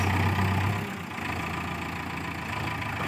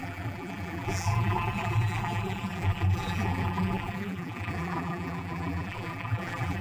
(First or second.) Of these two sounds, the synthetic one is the second